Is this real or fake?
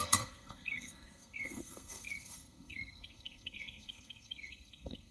fake